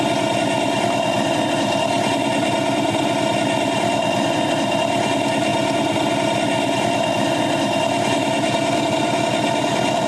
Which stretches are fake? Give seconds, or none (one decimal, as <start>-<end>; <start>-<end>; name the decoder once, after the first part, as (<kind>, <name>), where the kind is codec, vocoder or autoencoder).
none